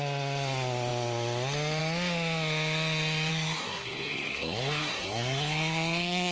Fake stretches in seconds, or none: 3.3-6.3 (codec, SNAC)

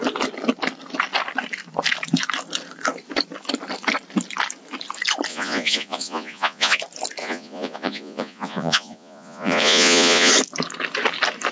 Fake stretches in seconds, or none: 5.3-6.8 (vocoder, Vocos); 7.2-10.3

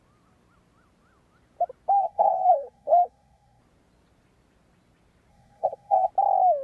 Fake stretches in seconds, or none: 2.0-3.6 (codec, SNAC); 5.3-6.1